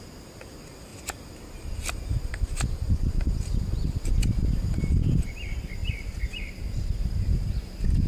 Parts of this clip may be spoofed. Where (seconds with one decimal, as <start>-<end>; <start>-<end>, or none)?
4.2-5.2; 5.8-7.5